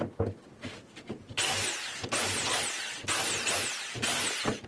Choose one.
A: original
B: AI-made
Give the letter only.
A